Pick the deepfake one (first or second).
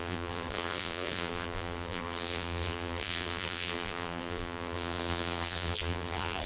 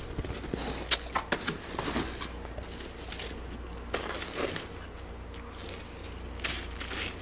first